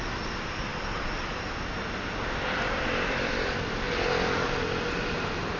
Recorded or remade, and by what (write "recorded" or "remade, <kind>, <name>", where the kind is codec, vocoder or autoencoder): recorded